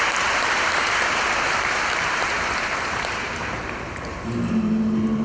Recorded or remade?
remade